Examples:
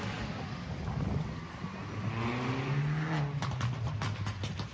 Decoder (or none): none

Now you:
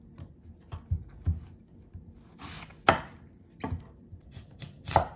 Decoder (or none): none